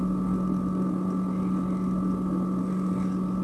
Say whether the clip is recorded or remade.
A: recorded